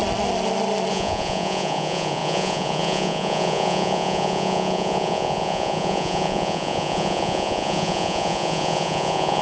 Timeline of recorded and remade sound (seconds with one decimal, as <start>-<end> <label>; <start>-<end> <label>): 0.0-0.9 recorded; 0.9-9.4 remade